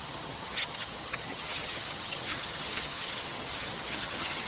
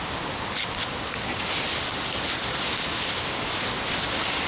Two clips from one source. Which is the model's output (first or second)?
first